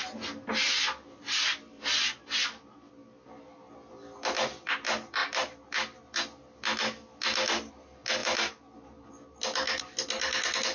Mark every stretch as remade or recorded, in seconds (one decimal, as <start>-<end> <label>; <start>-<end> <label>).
0.0-10.7 recorded